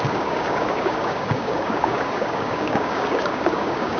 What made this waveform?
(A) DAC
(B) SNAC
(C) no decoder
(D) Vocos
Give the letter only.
A